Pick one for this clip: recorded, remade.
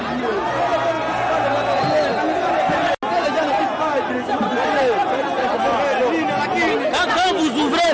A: recorded